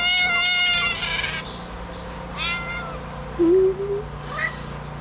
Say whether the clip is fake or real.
real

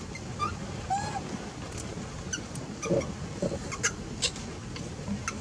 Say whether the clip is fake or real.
real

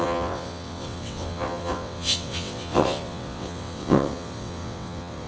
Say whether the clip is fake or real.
fake